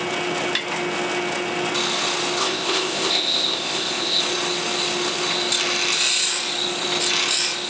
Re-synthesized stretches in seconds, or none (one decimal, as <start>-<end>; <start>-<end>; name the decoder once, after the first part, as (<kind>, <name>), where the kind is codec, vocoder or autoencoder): 2.4-4.2 (codec, ZipCodec)